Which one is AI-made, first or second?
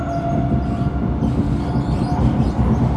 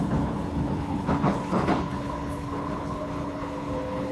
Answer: second